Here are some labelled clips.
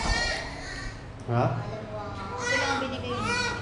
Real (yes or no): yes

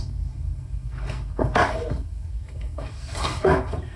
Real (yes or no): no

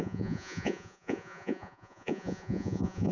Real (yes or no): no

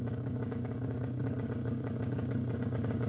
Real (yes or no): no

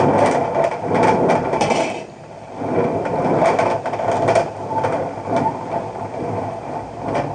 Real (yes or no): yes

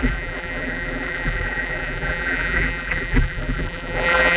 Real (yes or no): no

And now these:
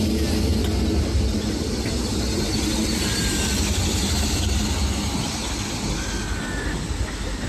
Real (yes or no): yes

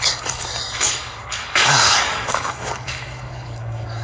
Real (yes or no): no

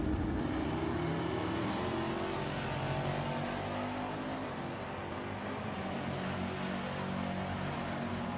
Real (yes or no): yes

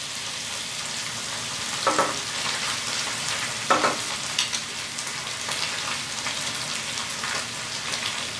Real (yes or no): yes